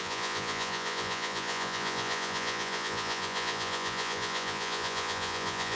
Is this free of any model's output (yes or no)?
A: no